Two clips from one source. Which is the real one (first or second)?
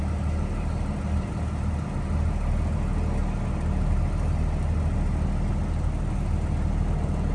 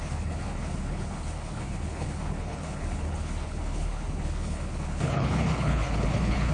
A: first